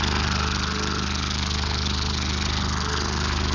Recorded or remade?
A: remade